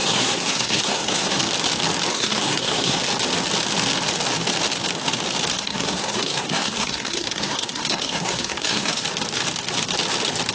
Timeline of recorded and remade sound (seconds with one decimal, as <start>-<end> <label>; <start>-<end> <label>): 0.0-1.4 remade; 1.4-2.1 recorded; 2.1-3.0 remade; 3.0-5.5 recorded; 5.5-9.0 remade; 9.0-10.5 recorded